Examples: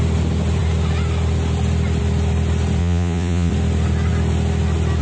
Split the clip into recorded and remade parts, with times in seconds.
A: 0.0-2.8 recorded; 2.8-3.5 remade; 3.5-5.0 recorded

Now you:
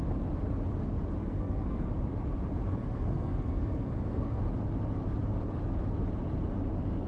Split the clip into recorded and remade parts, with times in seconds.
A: 0.0-1.2 recorded; 1.2-1.9 remade; 1.9-2.7 recorded; 2.7-4.4 remade; 4.4-7.1 recorded

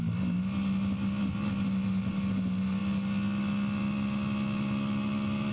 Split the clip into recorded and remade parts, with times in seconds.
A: 0.0-5.5 recorded

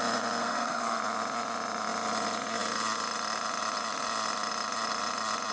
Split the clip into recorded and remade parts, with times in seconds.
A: 0.0-0.4 recorded; 0.4-1.0 remade; 1.0-5.5 recorded

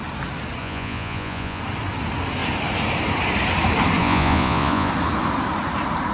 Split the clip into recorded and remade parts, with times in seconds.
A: 0.0-0.6 recorded; 0.6-1.6 remade; 1.6-4.0 recorded; 4.0-4.9 remade; 4.9-6.1 recorded